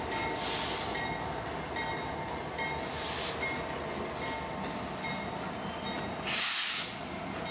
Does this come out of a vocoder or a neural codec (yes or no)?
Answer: no